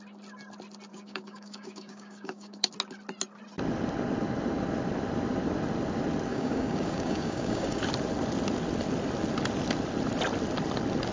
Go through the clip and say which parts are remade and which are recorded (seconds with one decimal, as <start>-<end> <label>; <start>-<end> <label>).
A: 0.0-0.9 recorded; 0.9-2.7 remade; 2.7-6.3 recorded; 6.3-7.8 remade; 7.8-11.1 recorded